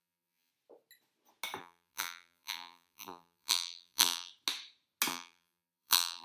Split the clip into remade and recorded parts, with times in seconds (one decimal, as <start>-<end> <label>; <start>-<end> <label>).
0.0-0.5 remade; 0.5-1.6 recorded; 1.6-4.3 remade; 4.3-5.1 recorded; 5.1-6.2 remade